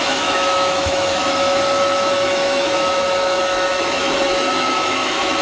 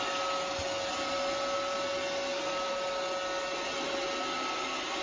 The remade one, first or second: first